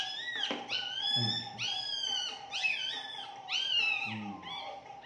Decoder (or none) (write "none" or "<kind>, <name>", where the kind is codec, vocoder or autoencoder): none